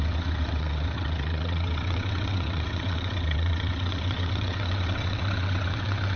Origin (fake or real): fake